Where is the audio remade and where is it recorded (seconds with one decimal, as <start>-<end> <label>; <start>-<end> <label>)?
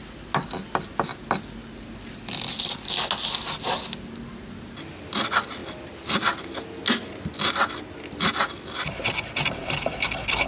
0.0-10.5 recorded